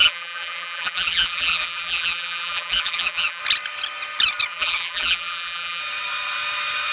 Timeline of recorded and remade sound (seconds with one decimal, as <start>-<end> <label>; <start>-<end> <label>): 0.0-3.4 remade; 3.4-4.5 recorded; 4.5-5.8 remade; 5.8-6.9 recorded